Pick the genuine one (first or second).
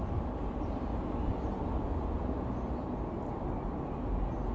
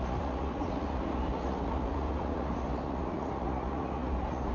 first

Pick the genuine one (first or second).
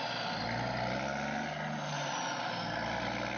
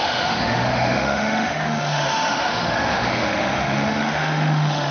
first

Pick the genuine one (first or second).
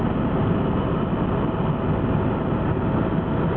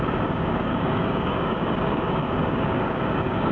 first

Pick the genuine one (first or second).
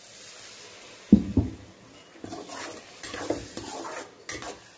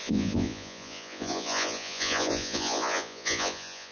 first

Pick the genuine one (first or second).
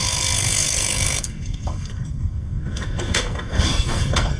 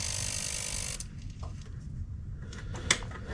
second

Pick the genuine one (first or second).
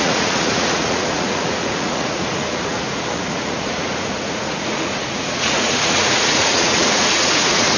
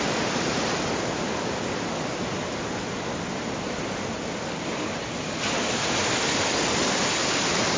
second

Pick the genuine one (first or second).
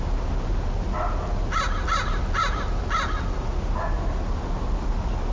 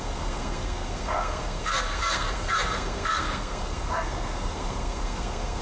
first